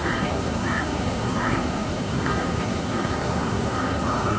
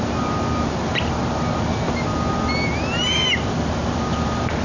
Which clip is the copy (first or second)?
first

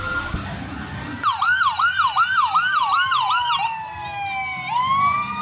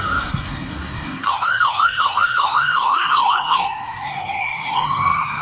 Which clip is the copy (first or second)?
second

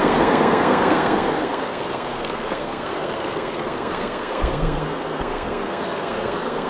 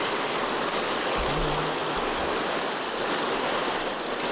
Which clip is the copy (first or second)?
first